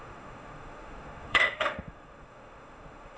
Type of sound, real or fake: fake